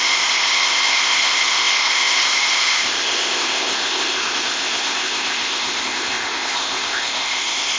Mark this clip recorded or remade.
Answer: remade